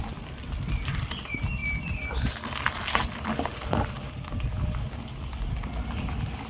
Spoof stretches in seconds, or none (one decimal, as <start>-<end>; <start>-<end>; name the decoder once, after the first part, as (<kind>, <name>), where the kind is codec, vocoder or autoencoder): none